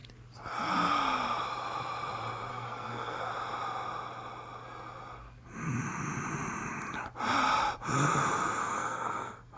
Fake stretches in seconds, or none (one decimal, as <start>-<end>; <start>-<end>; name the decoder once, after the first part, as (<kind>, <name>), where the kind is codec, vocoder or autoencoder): 2.5-3.3 (codec, SNAC); 8.6-9.6